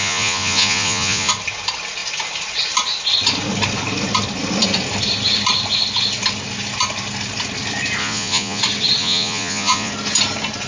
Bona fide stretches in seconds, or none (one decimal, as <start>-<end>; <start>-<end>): 1.3-8.0; 8.6-9.0; 9.9-10.7